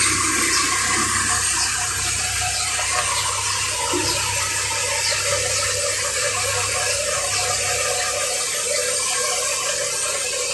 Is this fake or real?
real